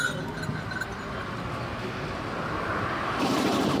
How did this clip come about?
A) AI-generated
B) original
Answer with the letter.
B